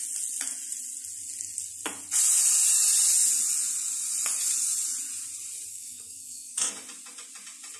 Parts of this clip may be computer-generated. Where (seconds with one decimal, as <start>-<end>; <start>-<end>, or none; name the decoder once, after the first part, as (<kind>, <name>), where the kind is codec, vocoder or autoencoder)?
5.7-6.7 (codec, SNAC)